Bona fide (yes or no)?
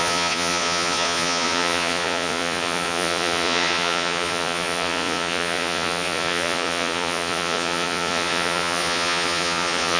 no